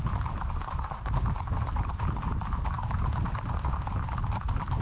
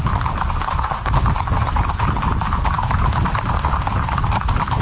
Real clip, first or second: first